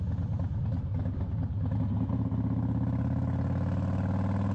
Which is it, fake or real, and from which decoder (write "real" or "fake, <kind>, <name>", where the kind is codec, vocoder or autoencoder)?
real